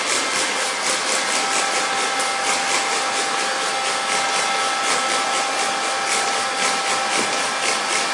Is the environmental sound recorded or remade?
recorded